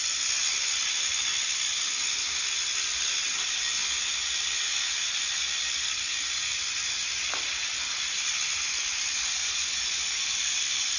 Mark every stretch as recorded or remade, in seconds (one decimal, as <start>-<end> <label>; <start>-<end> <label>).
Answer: 0.0-9.4 recorded; 9.4-10.2 remade; 10.2-11.0 recorded